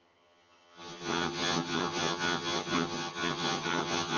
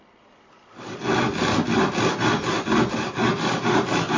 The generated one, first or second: first